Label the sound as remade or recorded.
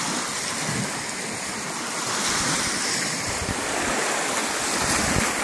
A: recorded